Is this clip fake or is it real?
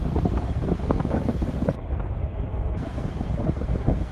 fake